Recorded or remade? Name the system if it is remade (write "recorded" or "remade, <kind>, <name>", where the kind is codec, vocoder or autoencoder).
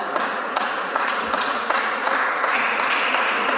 remade, vocoder, Vocos